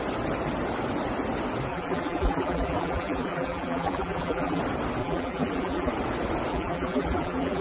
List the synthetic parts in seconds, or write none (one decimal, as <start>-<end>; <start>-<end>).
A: 1.7-4.6; 5.0-5.9; 6.5-7.6